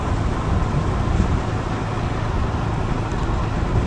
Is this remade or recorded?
recorded